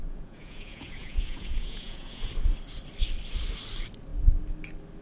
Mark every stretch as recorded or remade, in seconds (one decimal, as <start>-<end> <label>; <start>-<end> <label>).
0.0-2.3 remade; 2.3-5.0 recorded